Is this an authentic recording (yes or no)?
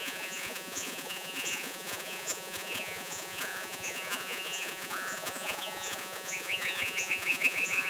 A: no